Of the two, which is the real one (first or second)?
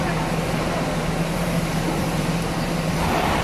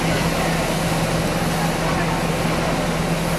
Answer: second